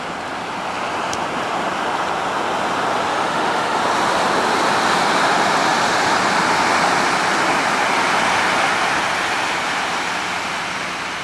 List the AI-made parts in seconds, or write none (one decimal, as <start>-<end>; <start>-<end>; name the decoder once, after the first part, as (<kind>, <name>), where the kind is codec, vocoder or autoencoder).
3.1-3.8 (autoencoder, DAC-VAE)